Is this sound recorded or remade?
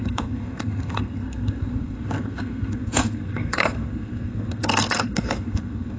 remade